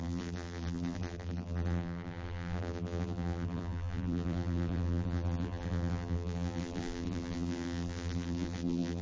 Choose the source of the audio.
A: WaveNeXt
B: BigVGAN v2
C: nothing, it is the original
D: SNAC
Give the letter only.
B